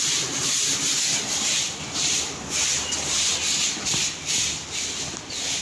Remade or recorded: recorded